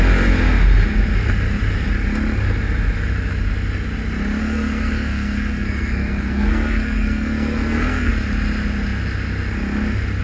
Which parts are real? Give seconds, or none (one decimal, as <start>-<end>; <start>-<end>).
0.0-4.4; 8.1-10.2